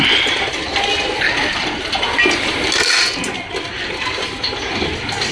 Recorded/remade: recorded